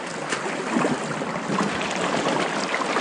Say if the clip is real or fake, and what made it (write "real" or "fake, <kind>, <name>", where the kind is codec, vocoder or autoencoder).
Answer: real